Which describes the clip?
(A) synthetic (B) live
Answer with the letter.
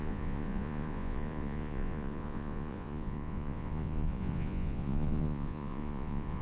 A